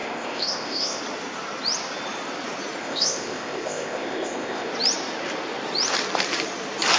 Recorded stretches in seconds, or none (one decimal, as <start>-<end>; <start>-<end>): 1.0-2.8; 4.7-7.0